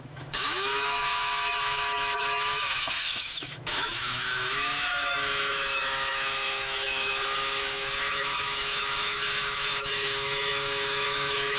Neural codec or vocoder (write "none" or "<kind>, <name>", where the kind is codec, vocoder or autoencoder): autoencoder, DAC-VAE